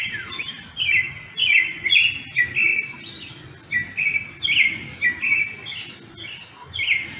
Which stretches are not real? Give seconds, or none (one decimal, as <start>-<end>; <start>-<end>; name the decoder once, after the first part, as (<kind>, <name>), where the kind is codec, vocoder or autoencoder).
1.4-2.0 (vocoder, Vocos)